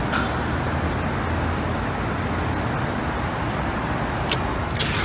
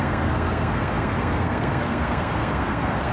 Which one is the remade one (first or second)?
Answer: second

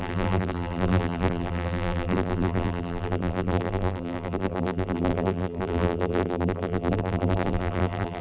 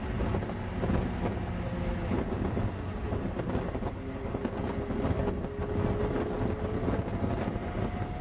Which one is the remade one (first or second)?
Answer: first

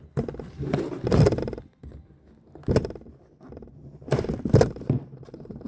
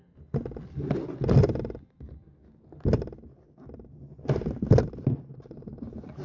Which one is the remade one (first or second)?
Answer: first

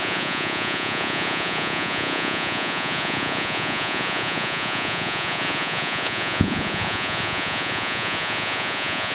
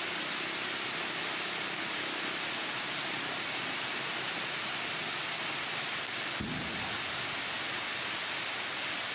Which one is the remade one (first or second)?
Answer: first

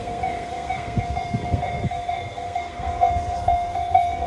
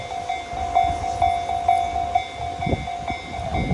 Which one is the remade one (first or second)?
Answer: first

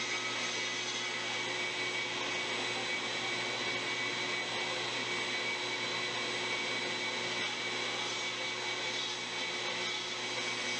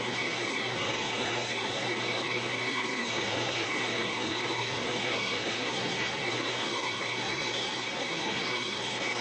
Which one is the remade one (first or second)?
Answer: second